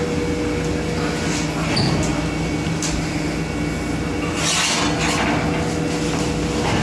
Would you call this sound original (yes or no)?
yes